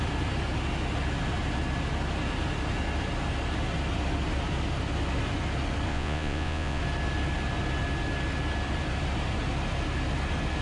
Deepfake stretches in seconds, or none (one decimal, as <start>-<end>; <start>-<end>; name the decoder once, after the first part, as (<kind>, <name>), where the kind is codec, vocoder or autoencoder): 5.9-6.8 (vocoder, Vocos)